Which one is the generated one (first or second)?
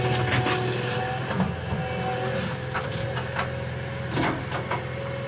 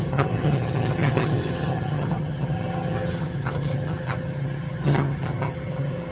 second